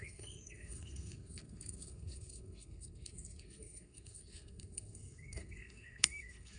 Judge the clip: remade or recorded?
remade